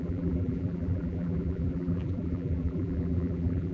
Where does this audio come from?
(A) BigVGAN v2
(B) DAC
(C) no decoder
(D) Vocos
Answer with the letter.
A